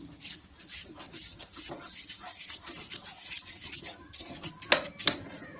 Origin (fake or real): real